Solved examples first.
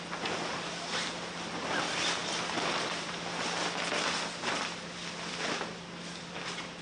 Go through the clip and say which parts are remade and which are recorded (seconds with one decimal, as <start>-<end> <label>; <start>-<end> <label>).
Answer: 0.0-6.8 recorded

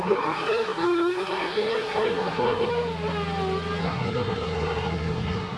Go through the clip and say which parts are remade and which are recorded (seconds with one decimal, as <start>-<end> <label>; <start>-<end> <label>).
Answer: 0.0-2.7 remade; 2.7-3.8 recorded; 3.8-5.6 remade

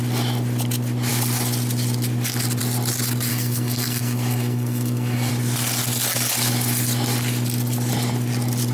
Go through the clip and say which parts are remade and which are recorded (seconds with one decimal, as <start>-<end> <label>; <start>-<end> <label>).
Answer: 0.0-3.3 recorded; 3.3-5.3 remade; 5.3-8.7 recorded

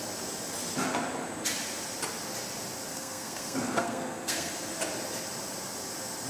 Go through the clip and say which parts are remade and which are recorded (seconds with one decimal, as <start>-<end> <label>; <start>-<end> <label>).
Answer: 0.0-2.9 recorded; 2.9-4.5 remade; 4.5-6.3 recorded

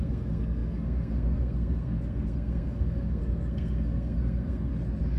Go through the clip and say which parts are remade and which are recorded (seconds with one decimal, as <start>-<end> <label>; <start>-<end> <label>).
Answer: 0.0-4.7 remade; 4.7-5.2 recorded

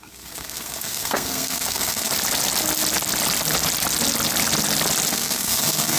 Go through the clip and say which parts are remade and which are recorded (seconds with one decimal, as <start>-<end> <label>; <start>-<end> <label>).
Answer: 0.0-2.1 remade; 2.1-5.1 recorded; 5.1-6.0 remade

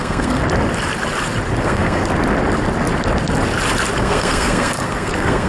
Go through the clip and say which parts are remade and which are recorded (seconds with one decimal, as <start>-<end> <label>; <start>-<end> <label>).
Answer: 0.0-0.4 remade; 0.4-1.6 recorded; 1.6-2.0 remade; 2.0-4.0 recorded; 4.0-5.5 remade